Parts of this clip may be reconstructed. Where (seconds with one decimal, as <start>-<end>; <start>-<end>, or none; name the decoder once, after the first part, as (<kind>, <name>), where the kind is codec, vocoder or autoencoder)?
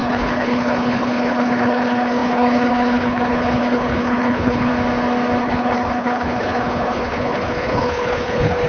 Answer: 0.0-4.7 (codec, HILCodec); 5.4-8.7